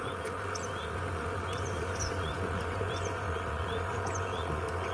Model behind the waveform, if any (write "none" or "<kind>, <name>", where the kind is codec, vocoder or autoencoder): vocoder, Vocos